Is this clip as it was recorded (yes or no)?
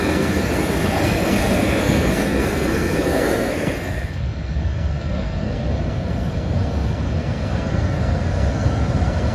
no